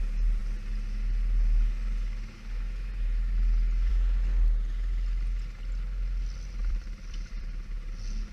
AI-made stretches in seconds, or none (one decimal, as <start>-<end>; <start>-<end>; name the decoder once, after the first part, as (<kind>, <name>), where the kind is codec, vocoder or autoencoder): 6.6-7.5 (vocoder, BigVGAN v2)